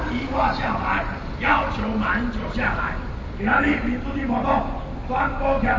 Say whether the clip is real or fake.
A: real